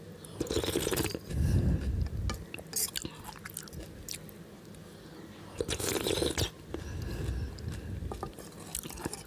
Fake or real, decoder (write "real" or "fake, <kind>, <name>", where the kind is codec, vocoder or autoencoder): real